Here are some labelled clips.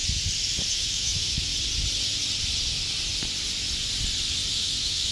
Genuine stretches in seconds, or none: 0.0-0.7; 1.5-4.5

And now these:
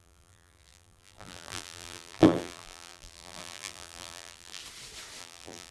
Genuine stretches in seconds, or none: 4.6-5.2

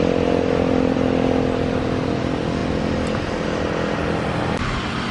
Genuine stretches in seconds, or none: 0.0-5.1

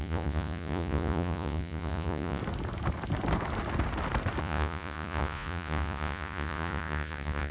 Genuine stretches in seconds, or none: 2.4-4.4